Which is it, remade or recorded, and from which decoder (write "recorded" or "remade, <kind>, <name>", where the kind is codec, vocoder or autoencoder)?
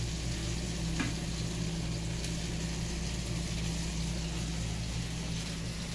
recorded